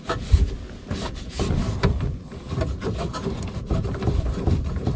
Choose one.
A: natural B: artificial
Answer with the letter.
A